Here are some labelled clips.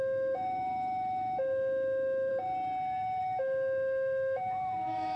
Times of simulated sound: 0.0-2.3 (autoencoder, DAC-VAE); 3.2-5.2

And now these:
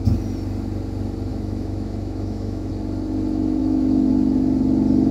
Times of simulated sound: 1.3-2.7 (autoencoder, DAC-VAE); 3.6-4.1